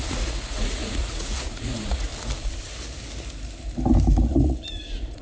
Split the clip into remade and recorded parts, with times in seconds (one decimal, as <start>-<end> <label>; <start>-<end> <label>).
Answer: 0.0-2.1 remade; 2.1-4.3 recorded; 4.3-5.2 remade